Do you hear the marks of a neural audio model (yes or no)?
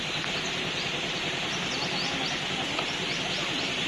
no